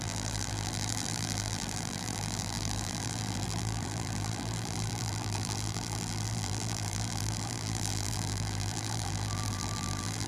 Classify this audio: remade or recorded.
remade